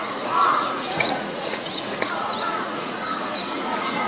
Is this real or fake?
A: fake